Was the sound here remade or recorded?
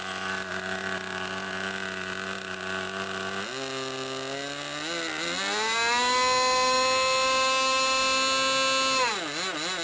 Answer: recorded